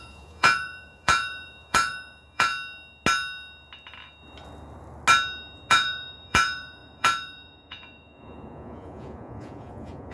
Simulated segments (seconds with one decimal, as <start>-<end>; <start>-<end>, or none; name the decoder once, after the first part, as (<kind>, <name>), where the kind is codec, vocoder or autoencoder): 0.0-2.5 (vocoder, Vocos); 5.7-10.1